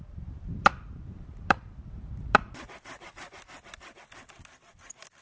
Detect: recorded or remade remade